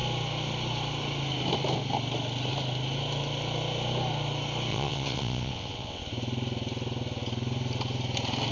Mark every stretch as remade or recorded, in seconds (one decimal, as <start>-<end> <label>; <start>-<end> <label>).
0.0-4.7 recorded; 4.7-6.0 remade; 6.0-8.5 recorded